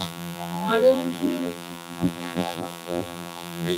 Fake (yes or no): yes